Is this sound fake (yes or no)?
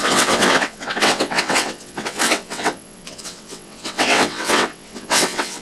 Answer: yes